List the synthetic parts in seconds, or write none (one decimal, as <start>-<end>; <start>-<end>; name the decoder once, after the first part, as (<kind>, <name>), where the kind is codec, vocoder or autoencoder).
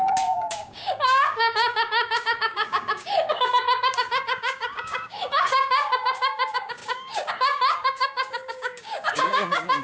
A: 0.0-9.8 (codec, DAC)